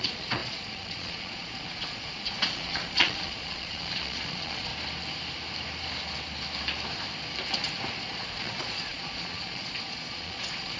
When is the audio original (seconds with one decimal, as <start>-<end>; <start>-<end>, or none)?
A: 4.7-8.2